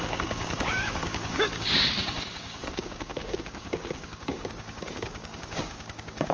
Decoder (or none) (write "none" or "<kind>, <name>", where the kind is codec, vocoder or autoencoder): codec, DAC